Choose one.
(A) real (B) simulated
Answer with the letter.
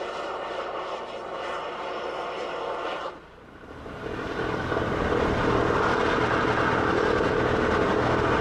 A